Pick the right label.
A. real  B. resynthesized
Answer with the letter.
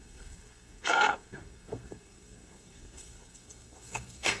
B